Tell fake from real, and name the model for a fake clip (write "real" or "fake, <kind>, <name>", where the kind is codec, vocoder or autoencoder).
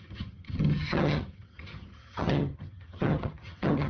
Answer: fake, vocoder, HiFi-GAN